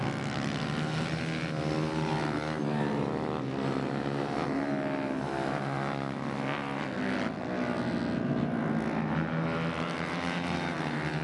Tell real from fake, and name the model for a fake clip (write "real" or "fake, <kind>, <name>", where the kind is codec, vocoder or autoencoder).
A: real